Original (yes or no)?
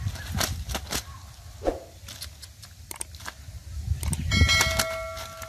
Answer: yes